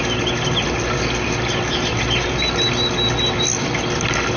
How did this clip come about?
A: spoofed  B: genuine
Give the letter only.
B